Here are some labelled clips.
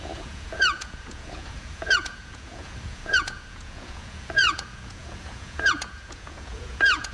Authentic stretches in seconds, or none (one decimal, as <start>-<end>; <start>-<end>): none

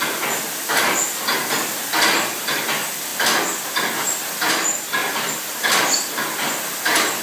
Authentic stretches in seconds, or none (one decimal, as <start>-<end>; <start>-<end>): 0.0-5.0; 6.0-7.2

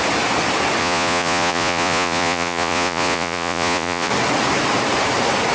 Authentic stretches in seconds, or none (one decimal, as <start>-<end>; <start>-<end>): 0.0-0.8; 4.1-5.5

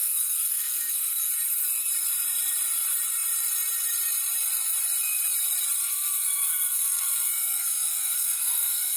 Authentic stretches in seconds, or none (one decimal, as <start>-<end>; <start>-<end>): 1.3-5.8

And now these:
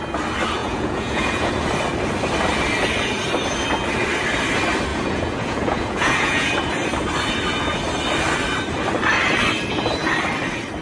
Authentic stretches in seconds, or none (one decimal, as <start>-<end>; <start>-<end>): 0.0-0.6; 1.5-4.9; 6.5-10.8

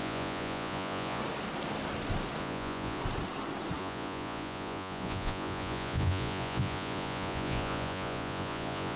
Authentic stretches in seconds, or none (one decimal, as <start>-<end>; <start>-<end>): 1.2-2.4; 3.0-3.8

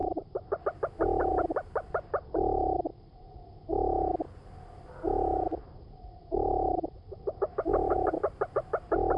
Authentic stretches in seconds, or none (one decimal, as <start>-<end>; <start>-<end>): 0.6-1.3; 3.5-5.6; 8.5-9.2

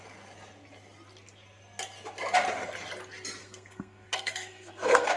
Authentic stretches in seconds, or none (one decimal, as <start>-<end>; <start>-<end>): 0.0-3.4